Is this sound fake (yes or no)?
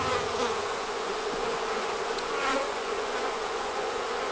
yes